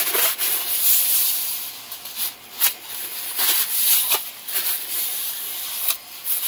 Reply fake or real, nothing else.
real